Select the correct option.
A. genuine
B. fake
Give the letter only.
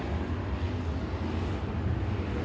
A